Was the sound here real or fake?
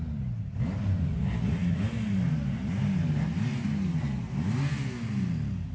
real